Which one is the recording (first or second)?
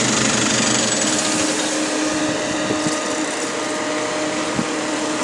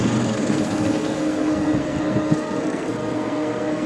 first